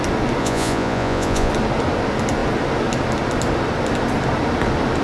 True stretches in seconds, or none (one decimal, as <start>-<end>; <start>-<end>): 0.0-0.4; 1.5-5.0

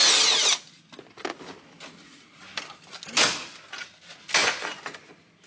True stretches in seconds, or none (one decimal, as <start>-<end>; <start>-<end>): 0.0-4.4; 5.1-5.5

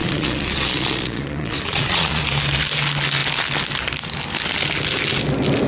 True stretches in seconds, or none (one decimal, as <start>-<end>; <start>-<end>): 2.2-5.7

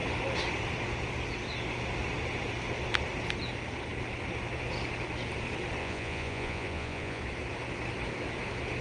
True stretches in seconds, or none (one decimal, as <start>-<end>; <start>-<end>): 0.0-5.8; 7.2-8.8

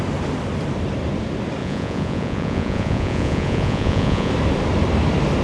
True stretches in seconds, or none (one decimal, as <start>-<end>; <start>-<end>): 0.0-1.6; 4.3-5.4